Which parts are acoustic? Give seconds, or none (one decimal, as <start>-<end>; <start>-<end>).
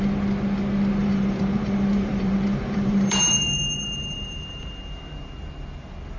0.0-1.0; 4.7-6.2